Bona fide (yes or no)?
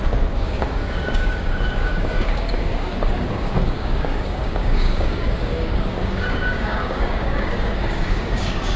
no